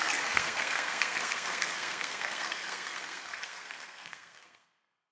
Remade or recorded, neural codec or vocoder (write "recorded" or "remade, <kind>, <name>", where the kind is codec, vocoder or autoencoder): remade, codec, SNAC